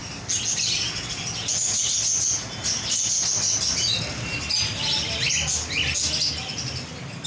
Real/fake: real